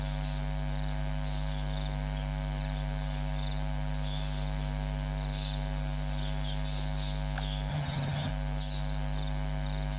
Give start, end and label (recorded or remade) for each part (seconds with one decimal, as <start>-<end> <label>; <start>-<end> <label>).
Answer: 0.0-7.7 recorded; 7.7-8.3 remade; 8.3-10.0 recorded